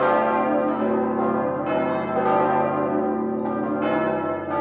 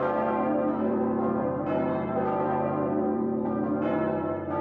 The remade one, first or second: second